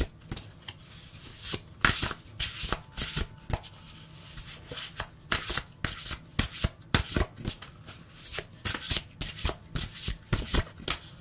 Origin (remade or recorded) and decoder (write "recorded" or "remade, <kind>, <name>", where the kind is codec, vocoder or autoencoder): recorded